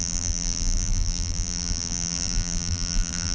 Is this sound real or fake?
fake